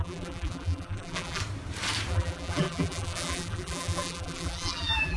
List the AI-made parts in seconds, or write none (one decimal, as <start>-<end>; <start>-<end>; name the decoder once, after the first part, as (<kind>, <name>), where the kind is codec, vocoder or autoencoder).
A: 0.0-1.4 (vocoder, BigVGAN v2); 2.1-5.2